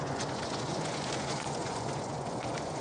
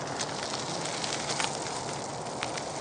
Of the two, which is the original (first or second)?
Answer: second